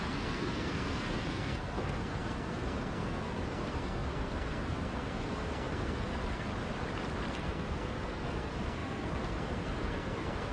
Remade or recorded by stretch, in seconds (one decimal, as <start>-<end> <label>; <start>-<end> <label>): 0.0-6.5 remade; 6.5-7.3 recorded; 7.3-10.5 remade